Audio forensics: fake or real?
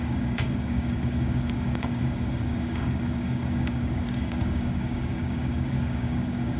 fake